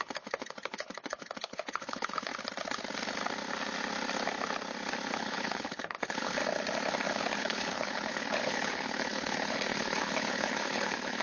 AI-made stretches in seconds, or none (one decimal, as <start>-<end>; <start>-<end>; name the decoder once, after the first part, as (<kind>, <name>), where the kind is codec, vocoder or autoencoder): 0.0-2.3 (codec, HILCodec); 5.1-6.4; 7.2-11.2